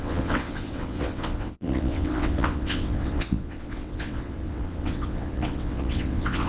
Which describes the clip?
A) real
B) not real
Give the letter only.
B